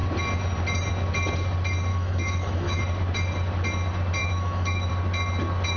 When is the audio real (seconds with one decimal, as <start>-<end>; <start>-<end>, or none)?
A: 0.0-1.9; 2.8-4.2; 4.9-5.8